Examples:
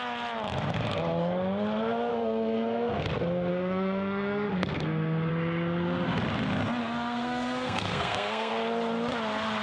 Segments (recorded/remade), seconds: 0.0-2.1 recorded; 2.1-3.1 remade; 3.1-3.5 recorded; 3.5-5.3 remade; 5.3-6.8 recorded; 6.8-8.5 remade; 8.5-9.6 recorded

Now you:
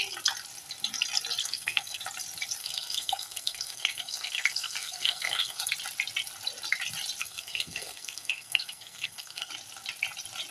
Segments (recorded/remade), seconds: 0.0-1.4 recorded; 1.4-2.0 remade; 2.0-2.6 recorded; 2.6-5.7 remade; 5.7-7.2 recorded; 7.2-9.5 remade; 9.5-10.5 recorded

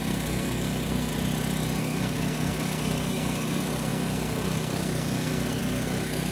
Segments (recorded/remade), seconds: 0.0-1.1 remade; 1.1-1.8 recorded; 1.8-6.3 remade

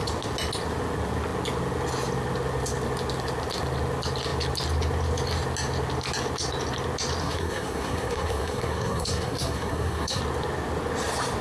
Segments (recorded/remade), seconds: 0.0-7.2 recorded; 7.2-10.2 remade; 10.2-11.4 recorded